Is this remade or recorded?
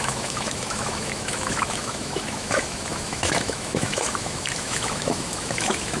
remade